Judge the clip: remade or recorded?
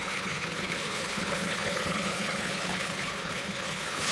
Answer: remade